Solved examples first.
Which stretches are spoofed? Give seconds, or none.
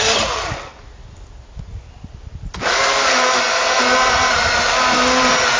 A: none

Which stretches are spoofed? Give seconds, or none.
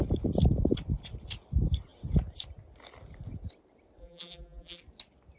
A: 4.0-4.8 (vocoder, BigVGAN v2)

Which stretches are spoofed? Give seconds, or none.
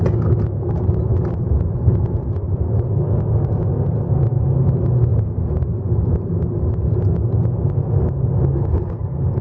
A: none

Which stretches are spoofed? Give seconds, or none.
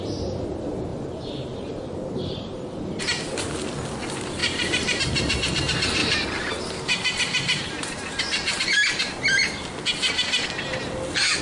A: 0.9-3.0 (vocoder, BigVGAN v2); 4.4-5.0; 6.0-8.2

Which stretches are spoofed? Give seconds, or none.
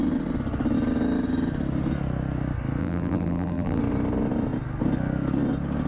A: 2.8-3.8 (vocoder, BigVGAN v2)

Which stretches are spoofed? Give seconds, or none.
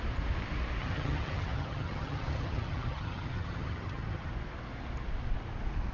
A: 0.8-4.3 (vocoder, HiFi-GAN)